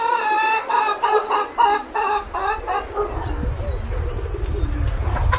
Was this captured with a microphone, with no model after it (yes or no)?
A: yes